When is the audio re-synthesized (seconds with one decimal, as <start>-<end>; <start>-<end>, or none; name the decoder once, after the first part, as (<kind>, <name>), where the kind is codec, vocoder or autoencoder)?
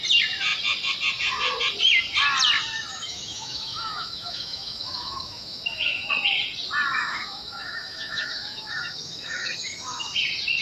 2.9-6.1 (autoencoder, DAC-VAE); 6.9-10.0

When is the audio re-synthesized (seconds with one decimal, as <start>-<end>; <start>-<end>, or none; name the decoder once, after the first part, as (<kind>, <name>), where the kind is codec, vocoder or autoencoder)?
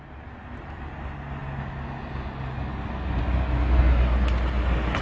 none